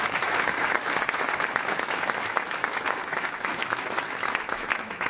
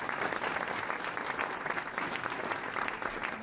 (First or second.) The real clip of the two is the second